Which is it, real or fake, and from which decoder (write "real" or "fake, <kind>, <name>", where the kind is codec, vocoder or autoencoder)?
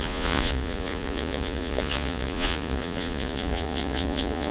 fake, vocoder, Vocos